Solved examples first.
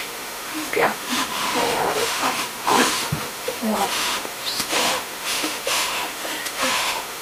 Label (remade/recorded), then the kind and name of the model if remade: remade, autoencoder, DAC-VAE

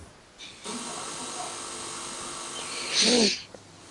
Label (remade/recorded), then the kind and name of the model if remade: recorded